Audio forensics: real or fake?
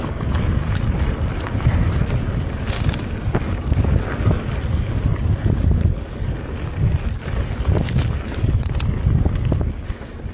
real